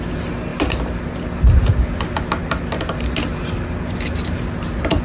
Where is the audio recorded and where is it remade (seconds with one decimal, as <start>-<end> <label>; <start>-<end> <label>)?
0.0-5.0 recorded